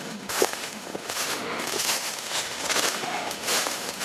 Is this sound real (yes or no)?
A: no